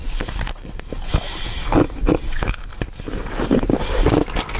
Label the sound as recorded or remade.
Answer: recorded